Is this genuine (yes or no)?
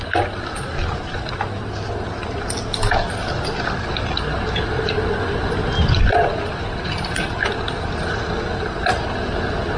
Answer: yes